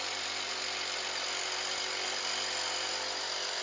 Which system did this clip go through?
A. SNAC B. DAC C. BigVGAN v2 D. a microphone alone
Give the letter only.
D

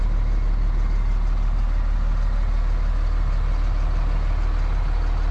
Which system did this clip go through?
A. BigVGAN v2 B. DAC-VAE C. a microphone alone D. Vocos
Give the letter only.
C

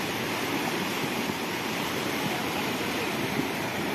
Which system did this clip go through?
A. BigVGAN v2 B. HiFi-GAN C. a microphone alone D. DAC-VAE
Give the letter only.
A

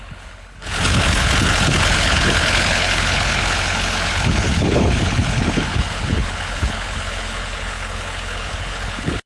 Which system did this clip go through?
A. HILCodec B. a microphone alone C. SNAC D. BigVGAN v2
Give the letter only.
A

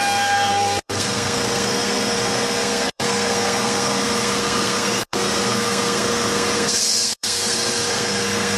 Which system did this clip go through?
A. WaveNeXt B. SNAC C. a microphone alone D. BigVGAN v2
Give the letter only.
B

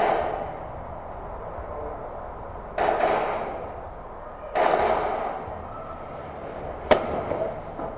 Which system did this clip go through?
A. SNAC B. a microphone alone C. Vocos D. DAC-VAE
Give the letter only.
B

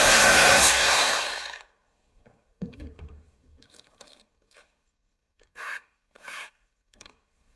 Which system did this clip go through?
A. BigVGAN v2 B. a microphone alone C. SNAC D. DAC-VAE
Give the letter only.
C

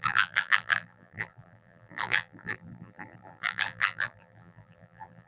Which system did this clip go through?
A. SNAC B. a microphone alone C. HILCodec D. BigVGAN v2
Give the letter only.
D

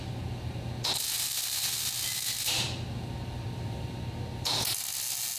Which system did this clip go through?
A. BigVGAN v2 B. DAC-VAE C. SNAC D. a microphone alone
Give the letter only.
D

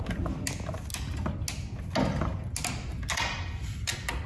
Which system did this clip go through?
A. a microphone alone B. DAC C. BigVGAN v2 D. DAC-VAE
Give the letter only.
A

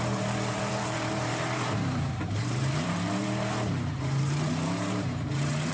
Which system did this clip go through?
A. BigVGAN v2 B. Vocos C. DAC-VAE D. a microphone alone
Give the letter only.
A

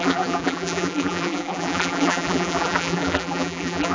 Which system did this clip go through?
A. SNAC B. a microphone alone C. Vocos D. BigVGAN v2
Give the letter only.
D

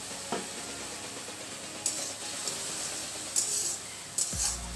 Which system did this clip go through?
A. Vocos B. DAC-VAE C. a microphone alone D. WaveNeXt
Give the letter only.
C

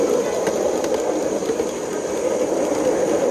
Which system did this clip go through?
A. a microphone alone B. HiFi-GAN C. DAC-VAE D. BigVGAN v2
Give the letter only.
A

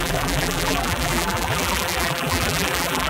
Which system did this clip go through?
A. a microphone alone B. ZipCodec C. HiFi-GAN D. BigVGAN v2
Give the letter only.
D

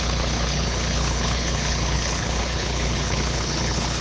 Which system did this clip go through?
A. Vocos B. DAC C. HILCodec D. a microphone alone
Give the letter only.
C